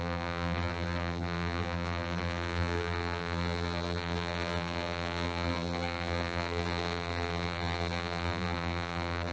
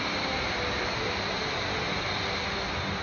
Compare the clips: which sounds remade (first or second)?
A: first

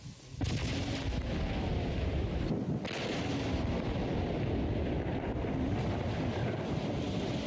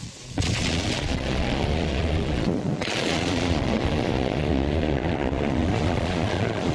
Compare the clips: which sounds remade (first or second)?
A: second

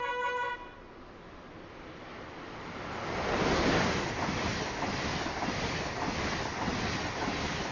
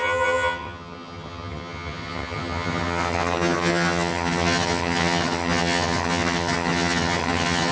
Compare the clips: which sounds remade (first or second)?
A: second